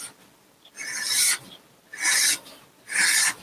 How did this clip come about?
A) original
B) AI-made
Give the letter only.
A